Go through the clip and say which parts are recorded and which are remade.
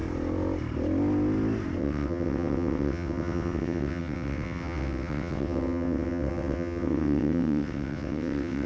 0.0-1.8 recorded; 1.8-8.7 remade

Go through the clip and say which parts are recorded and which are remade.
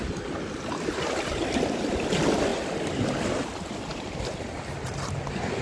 0.0-5.6 recorded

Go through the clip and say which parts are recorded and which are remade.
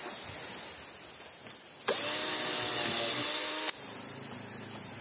0.0-5.0 recorded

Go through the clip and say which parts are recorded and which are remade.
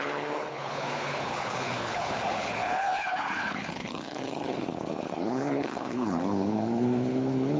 0.0-7.6 remade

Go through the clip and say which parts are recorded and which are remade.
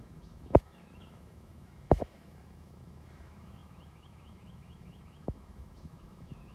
0.0-6.5 remade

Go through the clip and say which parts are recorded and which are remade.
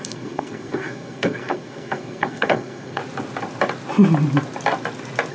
0.0-3.0 remade; 3.0-5.3 recorded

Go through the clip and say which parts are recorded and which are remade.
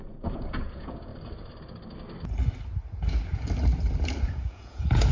0.0-1.1 remade; 1.1-4.2 recorded; 4.2-5.1 remade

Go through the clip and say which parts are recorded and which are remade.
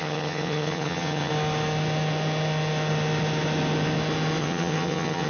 0.0-1.3 remade; 1.3-4.4 recorded; 4.4-5.3 remade